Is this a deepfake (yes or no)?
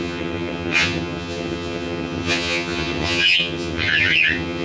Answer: yes